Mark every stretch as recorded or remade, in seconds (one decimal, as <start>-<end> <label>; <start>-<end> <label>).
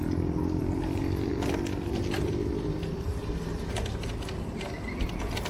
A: 0.0-5.5 recorded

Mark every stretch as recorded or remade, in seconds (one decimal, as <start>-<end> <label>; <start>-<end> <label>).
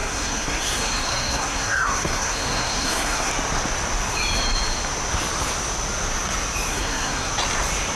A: 0.0-3.3 remade; 3.3-6.7 recorded; 6.7-7.3 remade; 7.3-8.0 recorded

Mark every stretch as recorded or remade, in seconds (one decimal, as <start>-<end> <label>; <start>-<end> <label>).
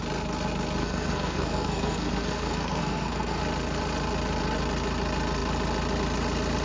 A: 0.0-0.8 recorded; 0.8-3.4 remade; 3.4-6.6 recorded